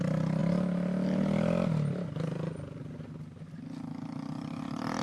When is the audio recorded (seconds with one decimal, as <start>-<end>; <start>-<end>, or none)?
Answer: 0.0-5.0